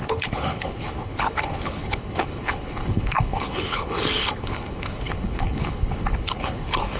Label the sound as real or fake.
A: fake